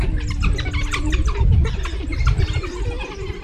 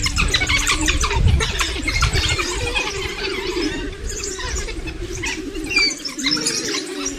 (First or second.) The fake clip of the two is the second